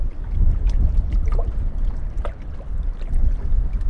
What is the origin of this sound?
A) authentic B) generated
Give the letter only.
A